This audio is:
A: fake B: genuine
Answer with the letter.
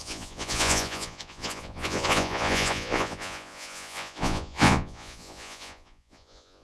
A